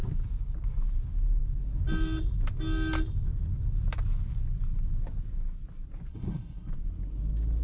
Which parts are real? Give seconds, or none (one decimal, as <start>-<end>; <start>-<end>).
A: 0.0-6.1; 6.7-7.6